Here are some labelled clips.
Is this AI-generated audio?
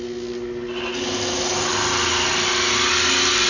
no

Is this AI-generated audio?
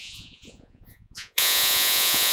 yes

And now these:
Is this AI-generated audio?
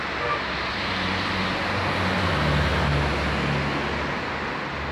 no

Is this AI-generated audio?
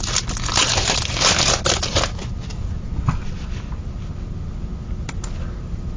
no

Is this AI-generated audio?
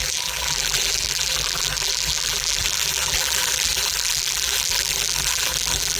yes